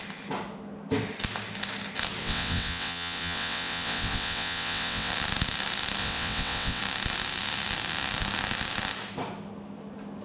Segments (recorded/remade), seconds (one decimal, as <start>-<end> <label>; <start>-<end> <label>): 0.0-2.2 recorded; 2.2-5.1 remade; 5.1-6.0 recorded; 6.0-6.8 remade; 6.8-10.2 recorded